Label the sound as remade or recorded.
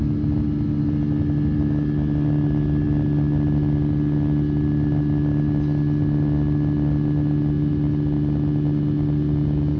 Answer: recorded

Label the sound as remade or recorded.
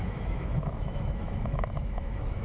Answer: remade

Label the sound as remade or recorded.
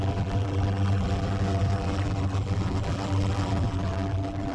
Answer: remade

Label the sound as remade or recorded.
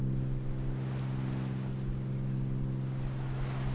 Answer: recorded